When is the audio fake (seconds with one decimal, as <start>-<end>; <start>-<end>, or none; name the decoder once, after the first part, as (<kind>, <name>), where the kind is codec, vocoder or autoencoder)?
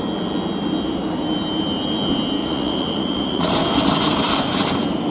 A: 2.4-3.5 (vocoder, Vocos)